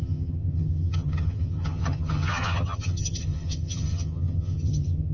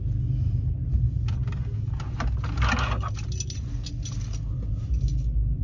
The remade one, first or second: first